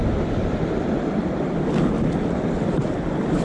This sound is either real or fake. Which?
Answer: real